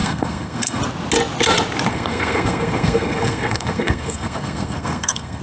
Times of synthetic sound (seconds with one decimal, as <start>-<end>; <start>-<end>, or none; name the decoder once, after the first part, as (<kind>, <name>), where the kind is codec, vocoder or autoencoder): 0.0-0.8 (codec, SNAC); 1.9-5.4